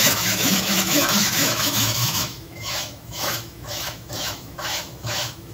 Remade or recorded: remade